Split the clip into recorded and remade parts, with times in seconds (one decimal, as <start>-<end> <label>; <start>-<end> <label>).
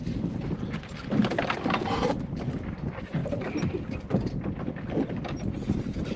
0.0-3.2 recorded; 3.2-4.3 remade; 4.3-6.2 recorded